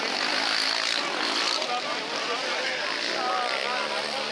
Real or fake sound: real